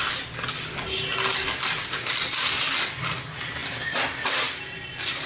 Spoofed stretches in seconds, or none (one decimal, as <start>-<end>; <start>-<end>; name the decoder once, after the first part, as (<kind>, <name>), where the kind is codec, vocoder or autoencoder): 3.6-5.3 (vocoder, BigVGAN v2)